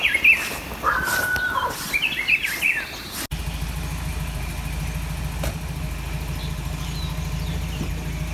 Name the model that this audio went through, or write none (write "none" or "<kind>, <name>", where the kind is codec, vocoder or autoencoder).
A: none